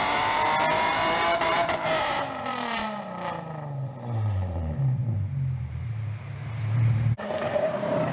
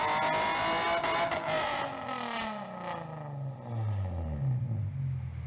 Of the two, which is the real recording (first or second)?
second